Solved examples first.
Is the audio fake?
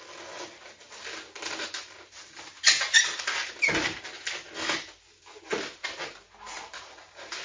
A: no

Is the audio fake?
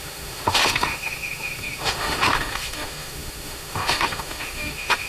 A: yes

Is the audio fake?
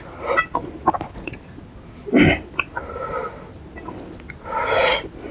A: no